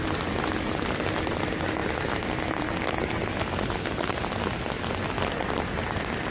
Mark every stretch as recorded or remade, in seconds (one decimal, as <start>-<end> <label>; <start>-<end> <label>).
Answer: 0.0-6.3 recorded